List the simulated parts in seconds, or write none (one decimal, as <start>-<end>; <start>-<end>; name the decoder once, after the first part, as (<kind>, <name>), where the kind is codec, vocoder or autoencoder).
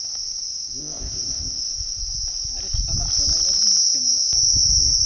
0.8-2.0 (codec, ZipCodec)